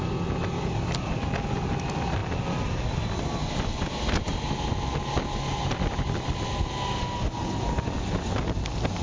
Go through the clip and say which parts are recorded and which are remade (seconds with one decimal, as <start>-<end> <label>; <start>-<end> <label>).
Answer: 0.0-2.2 recorded; 2.2-6.3 remade; 6.3-9.0 recorded